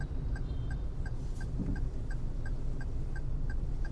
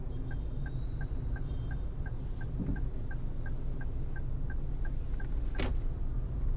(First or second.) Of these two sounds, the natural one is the second